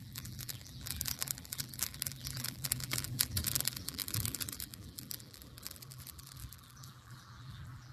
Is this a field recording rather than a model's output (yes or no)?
no